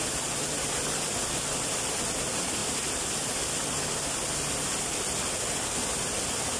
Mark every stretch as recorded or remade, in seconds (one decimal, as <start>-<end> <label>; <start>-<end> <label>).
0.0-6.6 recorded

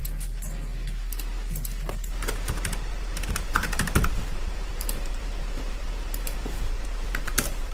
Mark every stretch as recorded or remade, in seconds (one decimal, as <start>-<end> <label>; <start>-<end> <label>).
0.0-3.3 recorded; 3.3-7.7 remade

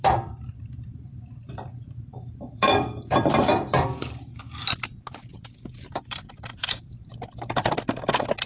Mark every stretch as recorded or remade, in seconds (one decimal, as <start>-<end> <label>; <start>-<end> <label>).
0.0-4.4 remade; 4.4-5.3 recorded; 5.3-7.1 remade; 7.1-8.5 recorded

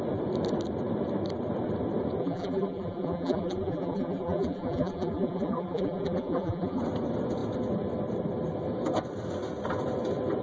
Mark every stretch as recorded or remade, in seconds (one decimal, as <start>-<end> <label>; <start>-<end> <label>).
0.0-2.2 recorded; 2.2-6.8 remade; 6.8-10.4 recorded

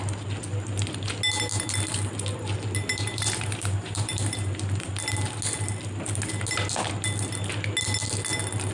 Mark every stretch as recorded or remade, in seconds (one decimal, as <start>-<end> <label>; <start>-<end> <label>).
0.0-2.9 recorded; 2.9-4.9 remade; 4.9-8.7 recorded

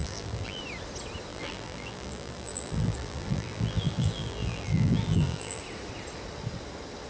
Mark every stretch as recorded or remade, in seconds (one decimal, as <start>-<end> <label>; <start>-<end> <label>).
0.0-0.6 remade; 0.6-1.3 recorded; 1.3-5.6 remade; 5.6-7.1 recorded

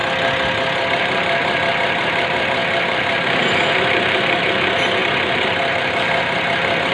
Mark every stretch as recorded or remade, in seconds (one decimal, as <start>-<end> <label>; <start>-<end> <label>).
0.0-0.9 recorded; 0.9-1.4 remade; 1.4-2.0 recorded; 2.0-6.9 remade